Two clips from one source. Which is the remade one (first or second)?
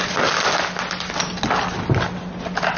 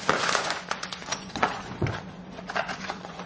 second